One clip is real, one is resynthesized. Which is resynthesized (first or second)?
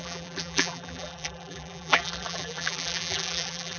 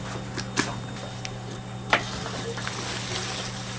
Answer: first